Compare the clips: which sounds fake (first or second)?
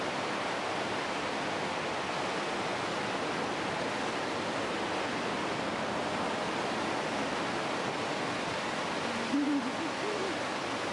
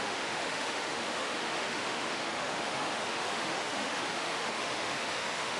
second